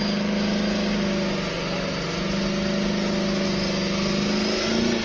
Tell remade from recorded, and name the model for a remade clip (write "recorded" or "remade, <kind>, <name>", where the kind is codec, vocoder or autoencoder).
recorded